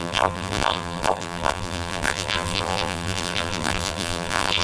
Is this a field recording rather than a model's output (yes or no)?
no